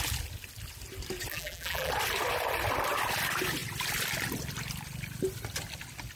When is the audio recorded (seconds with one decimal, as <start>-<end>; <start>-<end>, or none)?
0.0-1.3; 1.9-6.2

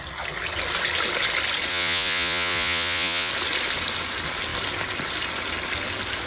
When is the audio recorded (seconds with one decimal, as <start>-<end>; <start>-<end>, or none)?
0.0-1.7; 3.3-6.3

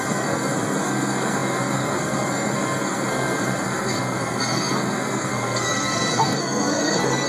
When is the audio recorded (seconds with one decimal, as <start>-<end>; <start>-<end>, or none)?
none

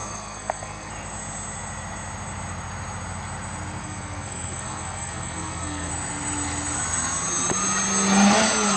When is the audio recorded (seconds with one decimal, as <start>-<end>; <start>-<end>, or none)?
0.9-3.8; 5.9-8.8

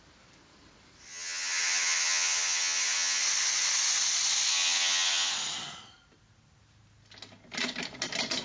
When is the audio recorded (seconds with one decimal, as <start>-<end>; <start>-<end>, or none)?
0.0-1.1; 3.2-4.5; 5.3-8.4

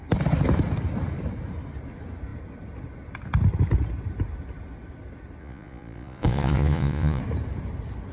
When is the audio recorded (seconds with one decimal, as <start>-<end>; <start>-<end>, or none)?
0.0-5.4; 7.2-8.1

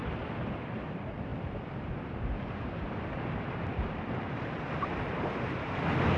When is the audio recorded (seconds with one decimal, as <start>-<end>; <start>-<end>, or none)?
0.0-0.8